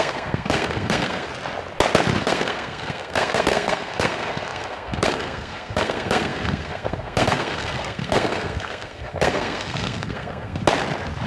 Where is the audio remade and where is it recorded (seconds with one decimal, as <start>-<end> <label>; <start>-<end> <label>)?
0.0-1.3 remade; 1.3-2.2 recorded; 2.2-10.6 remade; 10.6-11.3 recorded